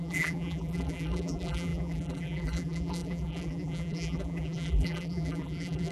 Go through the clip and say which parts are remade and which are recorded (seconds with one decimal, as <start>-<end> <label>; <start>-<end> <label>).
0.0-5.9 remade